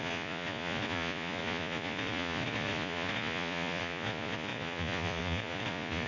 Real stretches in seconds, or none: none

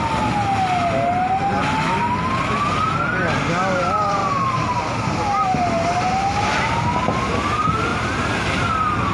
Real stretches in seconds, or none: 0.0-4.2; 5.6-7.9; 8.7-9.1

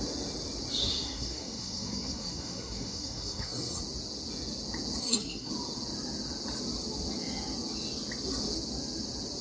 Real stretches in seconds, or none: 0.0-0.8; 3.8-5.0; 5.5-9.4